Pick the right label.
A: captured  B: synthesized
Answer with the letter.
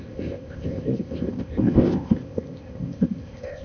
B